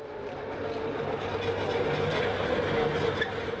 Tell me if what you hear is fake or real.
real